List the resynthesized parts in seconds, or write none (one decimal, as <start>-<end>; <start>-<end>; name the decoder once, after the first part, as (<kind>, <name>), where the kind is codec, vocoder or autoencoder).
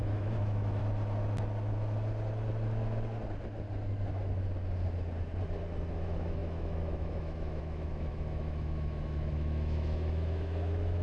0.0-0.8 (autoencoder, DAC-VAE); 5.9-11.0